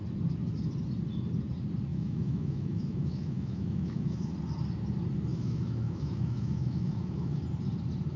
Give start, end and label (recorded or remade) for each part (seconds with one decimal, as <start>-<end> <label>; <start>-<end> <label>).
0.0-1.9 recorded; 1.9-4.3 remade; 4.3-5.3 recorded; 5.3-7.4 remade; 7.4-8.2 recorded